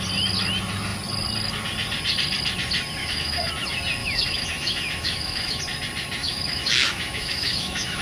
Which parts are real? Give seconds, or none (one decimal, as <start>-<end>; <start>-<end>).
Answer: 0.0-3.0; 3.5-4.0; 5.6-6.2